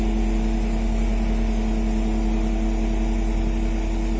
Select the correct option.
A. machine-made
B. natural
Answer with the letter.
B